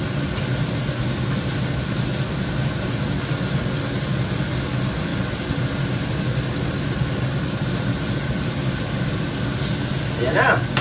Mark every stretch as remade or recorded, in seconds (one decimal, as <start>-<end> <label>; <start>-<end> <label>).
0.0-10.8 recorded